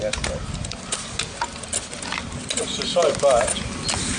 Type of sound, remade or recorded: recorded